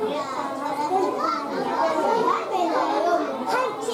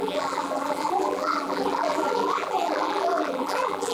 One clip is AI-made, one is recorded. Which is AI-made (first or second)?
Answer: second